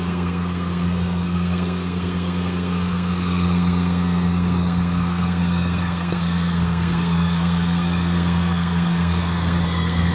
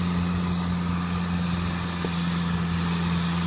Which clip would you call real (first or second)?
second